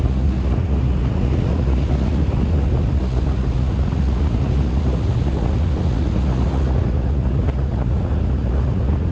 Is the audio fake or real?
fake